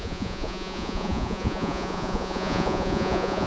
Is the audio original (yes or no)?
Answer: no